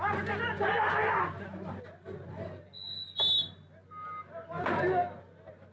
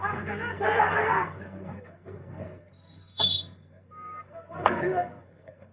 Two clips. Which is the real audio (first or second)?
first